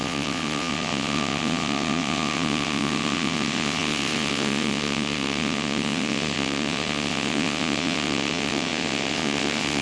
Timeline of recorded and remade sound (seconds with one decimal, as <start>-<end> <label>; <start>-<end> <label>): 0.0-9.8 remade